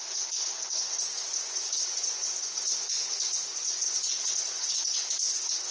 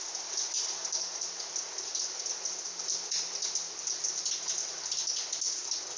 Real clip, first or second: second